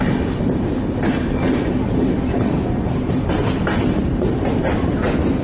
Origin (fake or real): real